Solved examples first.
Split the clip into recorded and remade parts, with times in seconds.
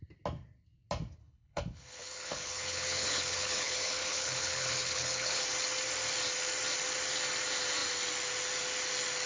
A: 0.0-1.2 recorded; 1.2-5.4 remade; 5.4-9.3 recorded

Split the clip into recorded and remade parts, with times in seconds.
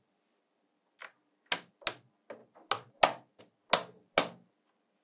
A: 0.0-5.0 recorded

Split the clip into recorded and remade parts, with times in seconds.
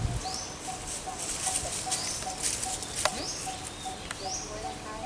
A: 0.0-5.1 recorded